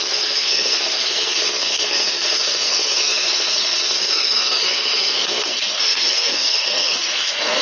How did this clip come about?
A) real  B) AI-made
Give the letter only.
B